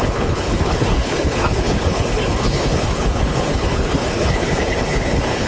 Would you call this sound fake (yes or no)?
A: yes